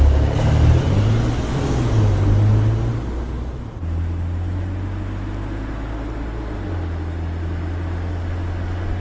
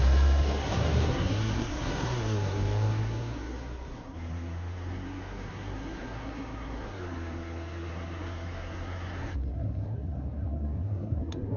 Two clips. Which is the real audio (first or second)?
first